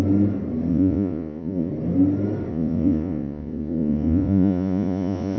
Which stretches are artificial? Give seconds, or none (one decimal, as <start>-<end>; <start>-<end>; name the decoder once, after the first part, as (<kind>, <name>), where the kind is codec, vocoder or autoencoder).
0.7-1.7 (vocoder, Vocos); 2.5-5.4